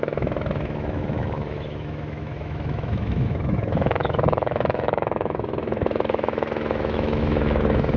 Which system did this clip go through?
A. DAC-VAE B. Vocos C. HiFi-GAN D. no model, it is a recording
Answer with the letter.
A